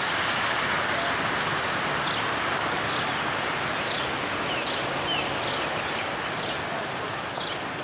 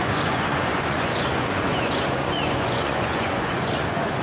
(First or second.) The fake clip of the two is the second